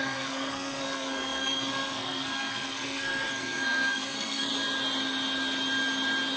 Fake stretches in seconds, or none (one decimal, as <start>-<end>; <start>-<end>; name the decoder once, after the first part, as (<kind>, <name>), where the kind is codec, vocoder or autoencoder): 0.0-4.5 (codec, SNAC)